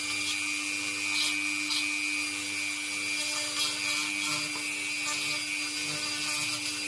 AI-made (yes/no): no